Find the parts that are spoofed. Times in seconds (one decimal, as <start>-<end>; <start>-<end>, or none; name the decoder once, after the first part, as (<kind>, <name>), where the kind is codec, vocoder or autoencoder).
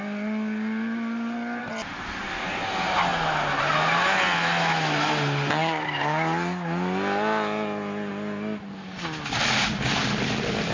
none